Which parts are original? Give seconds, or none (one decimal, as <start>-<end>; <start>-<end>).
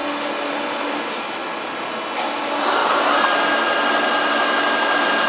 0.0-5.3